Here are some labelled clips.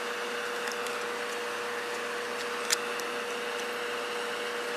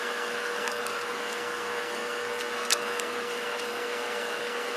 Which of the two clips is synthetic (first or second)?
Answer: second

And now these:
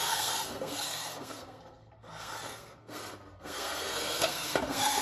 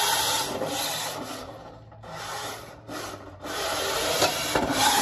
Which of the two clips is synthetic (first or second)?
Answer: first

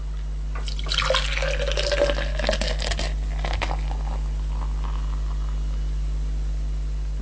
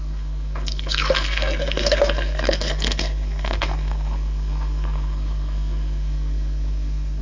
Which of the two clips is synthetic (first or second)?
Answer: second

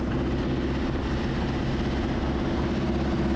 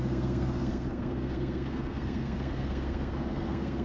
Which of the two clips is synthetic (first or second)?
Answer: second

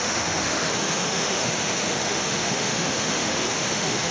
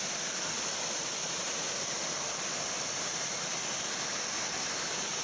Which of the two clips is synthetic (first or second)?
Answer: first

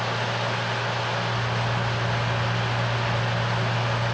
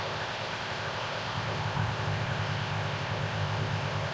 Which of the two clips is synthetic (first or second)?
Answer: second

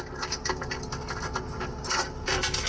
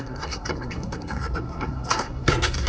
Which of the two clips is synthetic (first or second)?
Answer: second